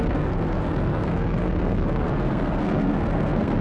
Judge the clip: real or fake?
fake